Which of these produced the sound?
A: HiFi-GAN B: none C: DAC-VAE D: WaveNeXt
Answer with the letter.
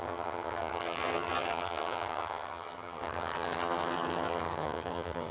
A